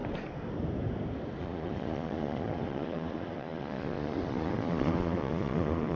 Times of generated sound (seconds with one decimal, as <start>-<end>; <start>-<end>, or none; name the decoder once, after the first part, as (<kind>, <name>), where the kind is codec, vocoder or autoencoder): 1.4-6.0 (vocoder, Vocos)